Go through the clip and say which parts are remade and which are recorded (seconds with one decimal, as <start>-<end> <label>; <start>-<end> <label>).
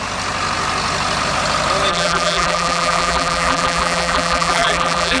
0.0-1.9 recorded; 1.9-5.2 remade